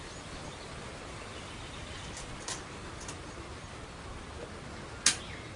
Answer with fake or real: real